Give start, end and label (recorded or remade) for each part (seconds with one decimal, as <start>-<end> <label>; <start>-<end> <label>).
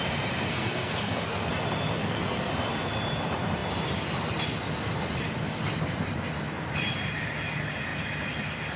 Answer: 0.0-0.5 recorded; 0.5-1.5 remade; 1.5-2.0 recorded; 2.0-2.5 remade; 2.5-8.8 recorded